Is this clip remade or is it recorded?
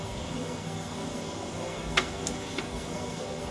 remade